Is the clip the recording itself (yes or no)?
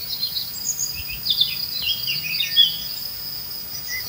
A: yes